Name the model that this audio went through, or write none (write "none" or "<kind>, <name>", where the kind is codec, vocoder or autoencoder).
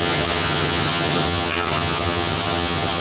vocoder, HiFi-GAN